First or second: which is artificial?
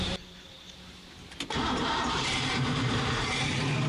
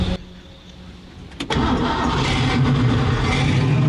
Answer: first